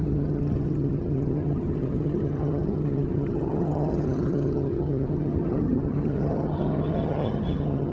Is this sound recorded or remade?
remade